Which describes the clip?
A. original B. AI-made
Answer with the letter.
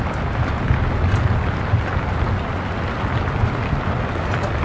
A